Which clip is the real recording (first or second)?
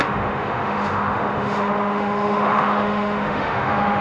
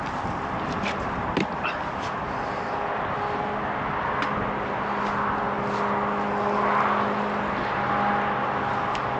second